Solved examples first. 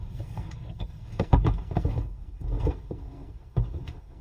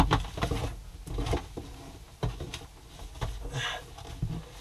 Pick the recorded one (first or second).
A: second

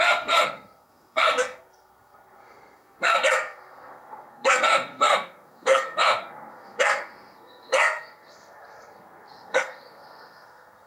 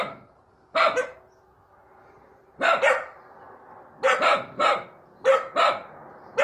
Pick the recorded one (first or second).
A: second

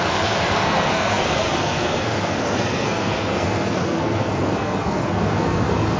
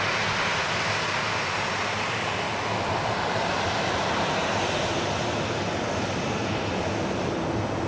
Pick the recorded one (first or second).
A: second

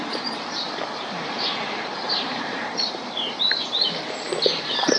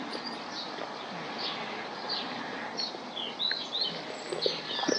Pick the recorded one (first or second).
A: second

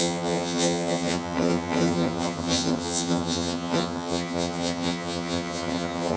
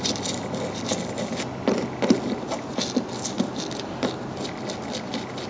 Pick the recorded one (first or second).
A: second